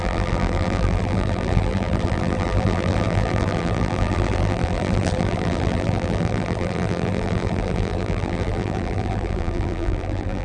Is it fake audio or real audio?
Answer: fake